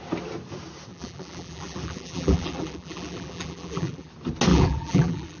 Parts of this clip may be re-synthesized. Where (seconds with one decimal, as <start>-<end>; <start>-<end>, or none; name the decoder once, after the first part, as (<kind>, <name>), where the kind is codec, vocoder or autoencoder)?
0.9-4.1 (vocoder, BigVGAN v2); 4.5-5.4